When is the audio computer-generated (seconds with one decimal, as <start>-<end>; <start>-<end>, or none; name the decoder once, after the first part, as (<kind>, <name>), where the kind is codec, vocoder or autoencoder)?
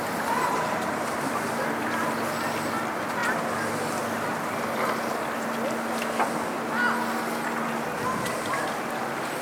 none